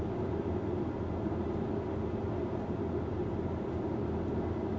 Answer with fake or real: real